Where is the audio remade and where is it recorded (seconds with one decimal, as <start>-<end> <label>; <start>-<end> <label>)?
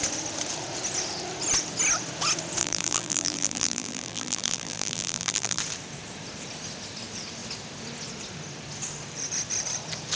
0.0-2.6 recorded; 2.6-5.6 remade; 5.6-10.2 recorded